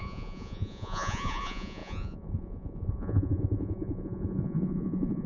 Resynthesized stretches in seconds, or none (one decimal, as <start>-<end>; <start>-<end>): 0.0-5.3